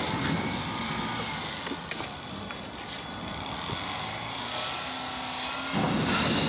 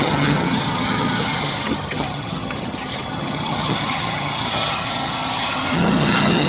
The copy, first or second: second